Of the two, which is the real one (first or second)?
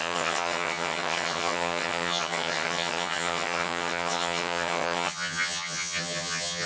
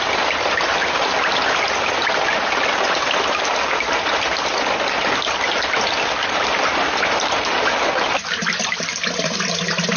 second